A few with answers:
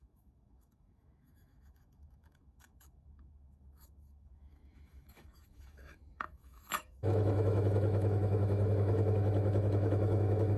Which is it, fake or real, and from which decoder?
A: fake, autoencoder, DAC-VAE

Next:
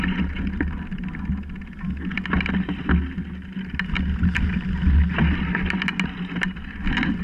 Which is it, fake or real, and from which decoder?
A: real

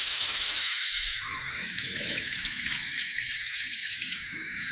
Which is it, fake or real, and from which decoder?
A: fake, autoencoder, DAC-VAE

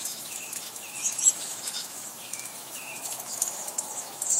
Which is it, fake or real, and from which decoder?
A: fake, autoencoder, DAC-VAE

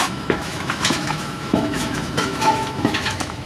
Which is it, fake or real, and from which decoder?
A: fake, autoencoder, DAC-VAE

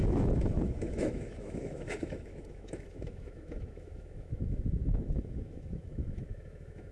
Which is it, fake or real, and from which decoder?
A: fake, autoencoder, DAC-VAE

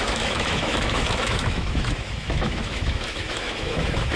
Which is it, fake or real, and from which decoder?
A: fake, autoencoder, DAC-VAE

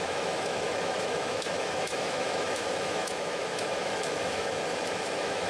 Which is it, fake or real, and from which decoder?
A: fake, autoencoder, DAC-VAE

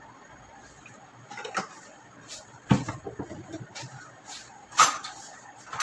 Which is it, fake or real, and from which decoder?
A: real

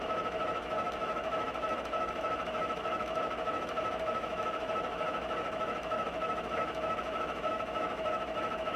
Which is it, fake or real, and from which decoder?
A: fake, autoencoder, DAC-VAE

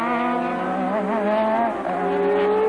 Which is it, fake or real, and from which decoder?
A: real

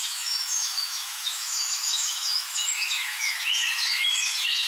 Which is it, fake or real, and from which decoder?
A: fake, autoencoder, DAC-VAE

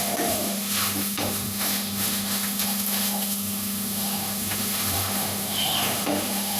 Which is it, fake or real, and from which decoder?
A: fake, autoencoder, DAC-VAE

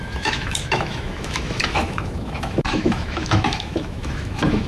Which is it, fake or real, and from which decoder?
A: fake, autoencoder, DAC-VAE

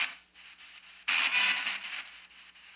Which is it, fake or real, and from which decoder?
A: real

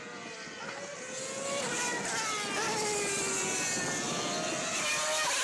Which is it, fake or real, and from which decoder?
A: real